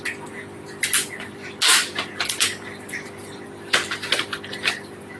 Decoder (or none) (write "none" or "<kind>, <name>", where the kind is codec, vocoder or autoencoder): none